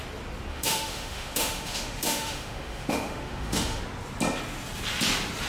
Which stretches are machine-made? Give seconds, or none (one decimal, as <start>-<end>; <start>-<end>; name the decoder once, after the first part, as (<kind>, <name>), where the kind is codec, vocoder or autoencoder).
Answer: 0.5-3.8 (autoencoder, DAC-VAE)